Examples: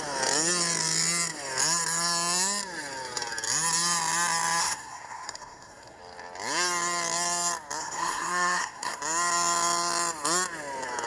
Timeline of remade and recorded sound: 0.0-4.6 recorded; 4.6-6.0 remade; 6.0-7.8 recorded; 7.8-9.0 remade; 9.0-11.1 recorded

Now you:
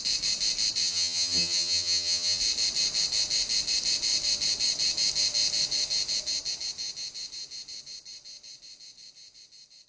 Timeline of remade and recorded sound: 0.0-0.8 recorded; 0.8-2.4 remade; 2.4-9.9 recorded

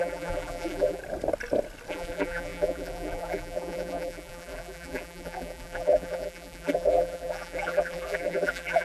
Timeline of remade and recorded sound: 0.0-1.0 remade; 1.0-1.9 recorded; 1.9-8.8 remade

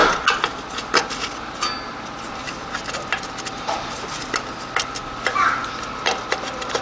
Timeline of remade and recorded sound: 0.0-6.8 recorded

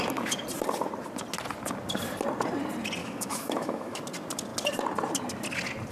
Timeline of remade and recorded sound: 0.0-3.0 recorded; 3.0-4.0 remade; 4.0-5.9 recorded

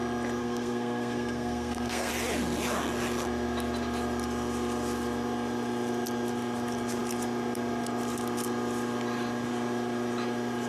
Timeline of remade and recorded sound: 0.0-0.4 recorded; 0.4-2.1 remade; 2.1-10.7 recorded

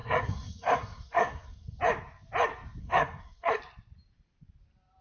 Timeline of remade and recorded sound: 0.0-1.8 remade; 1.8-2.8 recorded; 2.8-3.6 remade; 3.6-5.0 recorded